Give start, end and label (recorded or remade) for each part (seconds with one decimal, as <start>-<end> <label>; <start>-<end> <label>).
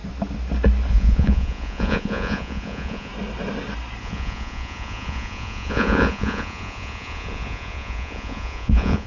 0.0-0.9 recorded; 0.9-3.1 remade; 3.1-4.0 recorded; 4.0-9.1 remade